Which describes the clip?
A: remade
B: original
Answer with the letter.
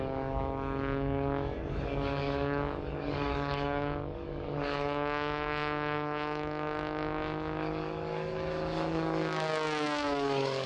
A